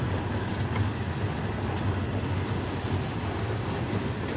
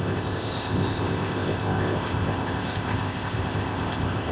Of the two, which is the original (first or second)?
first